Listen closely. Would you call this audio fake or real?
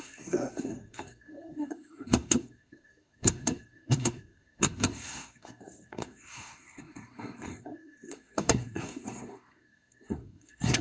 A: fake